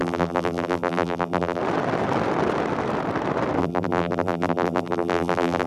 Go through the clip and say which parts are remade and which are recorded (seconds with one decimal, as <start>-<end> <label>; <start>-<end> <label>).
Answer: 0.0-1.6 remade; 1.6-3.6 recorded; 3.6-5.7 remade